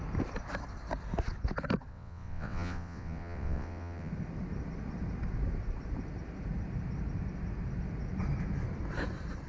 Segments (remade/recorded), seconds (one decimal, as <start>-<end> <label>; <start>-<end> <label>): 0.0-1.9 recorded; 1.9-4.1 remade; 4.1-9.5 recorded